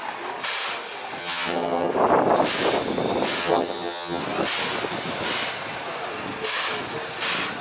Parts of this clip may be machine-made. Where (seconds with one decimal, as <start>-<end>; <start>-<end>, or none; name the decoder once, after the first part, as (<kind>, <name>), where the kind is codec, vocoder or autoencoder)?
1.2-1.9 (vocoder, HiFi-GAN); 3.4-4.2

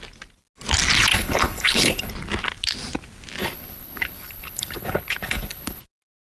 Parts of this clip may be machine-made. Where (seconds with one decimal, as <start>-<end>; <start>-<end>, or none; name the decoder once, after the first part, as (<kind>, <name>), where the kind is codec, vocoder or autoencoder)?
1.1-2.1 (codec, HILCodec); 3.4-5.8

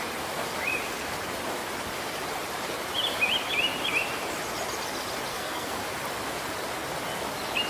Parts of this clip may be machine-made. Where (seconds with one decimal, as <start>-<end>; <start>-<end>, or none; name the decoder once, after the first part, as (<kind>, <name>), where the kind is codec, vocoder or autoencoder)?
5.3-5.8 (codec, SNAC)

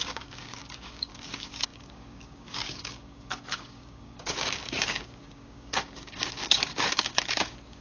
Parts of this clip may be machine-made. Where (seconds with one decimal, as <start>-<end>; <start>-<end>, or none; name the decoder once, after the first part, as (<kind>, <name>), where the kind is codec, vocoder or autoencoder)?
0.0-7.8 (codec, DAC)

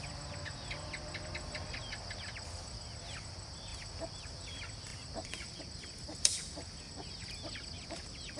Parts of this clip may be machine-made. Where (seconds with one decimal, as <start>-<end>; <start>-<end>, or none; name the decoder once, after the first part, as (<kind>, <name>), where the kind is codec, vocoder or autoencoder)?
0.0-3.7 (vocoder, BigVGAN v2); 4.2-6.4; 8.0-8.4